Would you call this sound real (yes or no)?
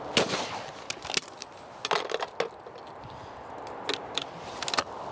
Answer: yes